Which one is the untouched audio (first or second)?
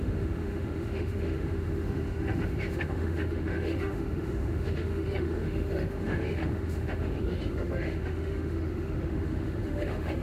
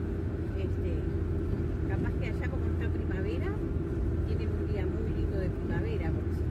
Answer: second